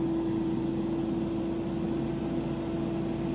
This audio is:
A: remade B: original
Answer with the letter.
B